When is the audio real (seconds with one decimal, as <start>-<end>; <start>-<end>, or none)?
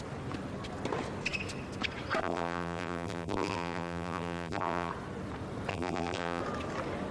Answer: 0.0-2.2; 4.9-5.7; 6.4-7.1